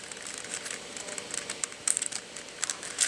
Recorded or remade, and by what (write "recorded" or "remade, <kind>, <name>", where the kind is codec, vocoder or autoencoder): remade, vocoder, BigVGAN v2